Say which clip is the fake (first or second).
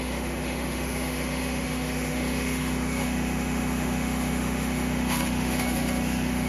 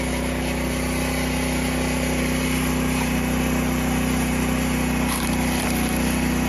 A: first